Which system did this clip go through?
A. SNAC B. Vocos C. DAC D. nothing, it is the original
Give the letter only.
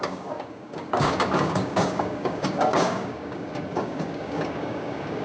C